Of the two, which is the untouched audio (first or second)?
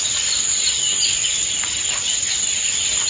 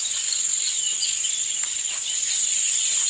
first